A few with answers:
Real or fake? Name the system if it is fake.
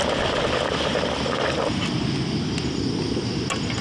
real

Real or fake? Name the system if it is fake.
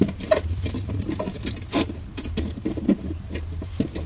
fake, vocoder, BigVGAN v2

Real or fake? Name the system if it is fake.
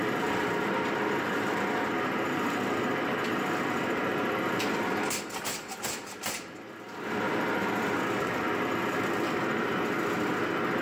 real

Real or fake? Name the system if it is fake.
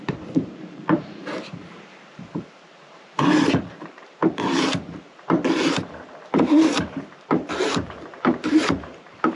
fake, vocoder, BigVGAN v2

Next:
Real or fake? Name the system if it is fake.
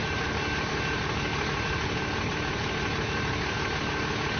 real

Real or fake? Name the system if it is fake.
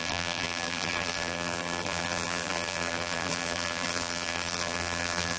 fake, vocoder, BigVGAN v2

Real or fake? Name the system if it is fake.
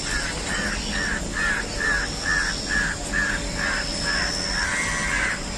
real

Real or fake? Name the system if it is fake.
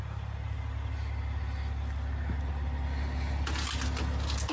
real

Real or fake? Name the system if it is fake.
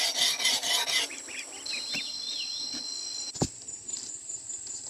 real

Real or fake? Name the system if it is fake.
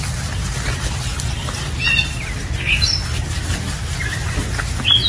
real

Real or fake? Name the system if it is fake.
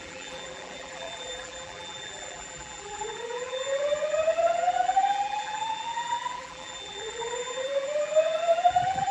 fake, vocoder, BigVGAN v2